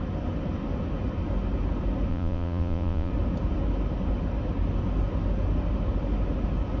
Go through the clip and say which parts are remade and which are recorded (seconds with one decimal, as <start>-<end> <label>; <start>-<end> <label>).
0.0-2.1 recorded; 2.1-3.1 remade; 3.1-6.8 recorded